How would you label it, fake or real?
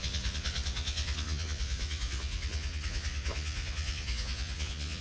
fake